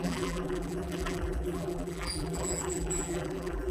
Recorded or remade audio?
remade